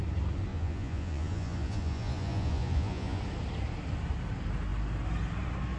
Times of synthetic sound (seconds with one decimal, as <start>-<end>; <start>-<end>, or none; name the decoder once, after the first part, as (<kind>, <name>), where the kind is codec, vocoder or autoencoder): 0.5-3.2 (vocoder, Vocos)